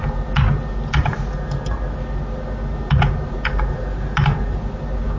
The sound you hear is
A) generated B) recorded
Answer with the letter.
B